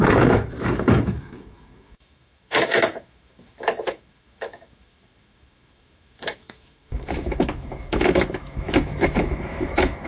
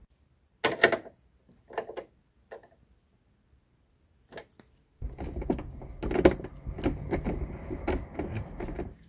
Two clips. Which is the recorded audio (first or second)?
second